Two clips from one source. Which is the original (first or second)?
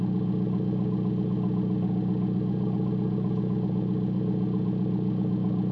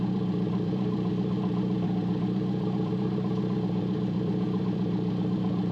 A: first